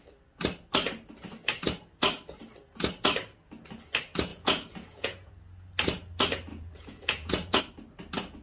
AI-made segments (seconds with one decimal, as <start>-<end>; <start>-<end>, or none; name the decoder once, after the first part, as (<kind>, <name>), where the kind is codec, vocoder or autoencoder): 4.3-5.3 (vocoder, Vocos); 6.5-7.6